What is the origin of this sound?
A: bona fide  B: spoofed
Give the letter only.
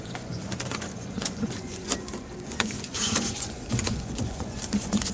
B